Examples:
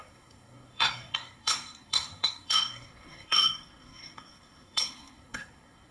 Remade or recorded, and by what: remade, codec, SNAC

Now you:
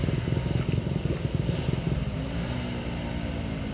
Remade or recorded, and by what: recorded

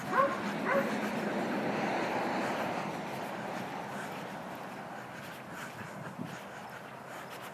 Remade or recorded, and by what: recorded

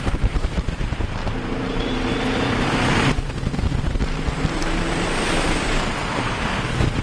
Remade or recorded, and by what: remade, vocoder, BigVGAN v2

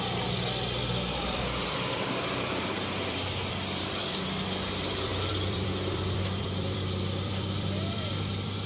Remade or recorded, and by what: remade, vocoder, BigVGAN v2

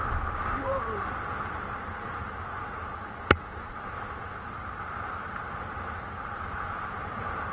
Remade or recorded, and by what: recorded